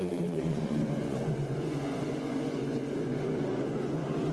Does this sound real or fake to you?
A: fake